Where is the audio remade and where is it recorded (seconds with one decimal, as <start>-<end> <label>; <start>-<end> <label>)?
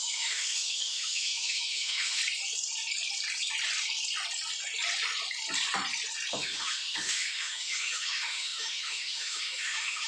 0.0-2.2 remade; 2.2-6.3 recorded; 6.3-10.1 remade